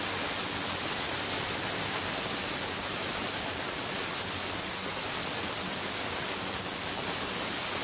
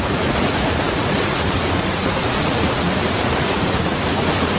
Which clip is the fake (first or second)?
second